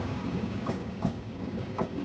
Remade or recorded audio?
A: remade